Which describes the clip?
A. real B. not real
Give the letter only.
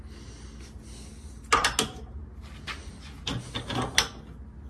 A